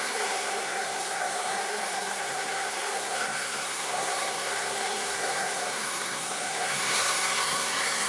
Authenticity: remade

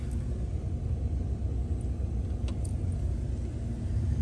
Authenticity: recorded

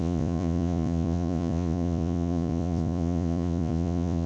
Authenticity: remade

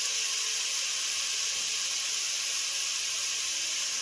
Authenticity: recorded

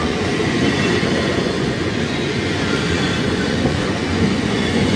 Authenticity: remade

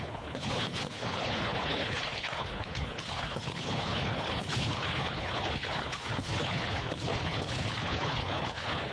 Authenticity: remade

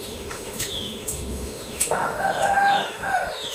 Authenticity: remade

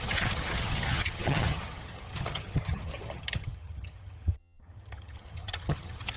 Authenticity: remade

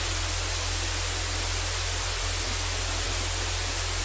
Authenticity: recorded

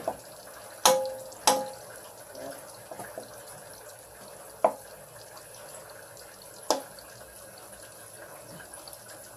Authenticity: recorded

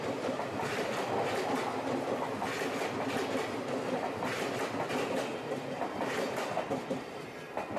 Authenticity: recorded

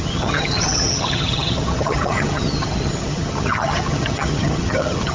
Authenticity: remade